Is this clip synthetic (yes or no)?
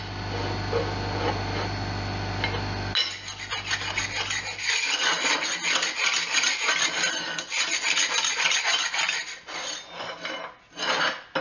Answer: no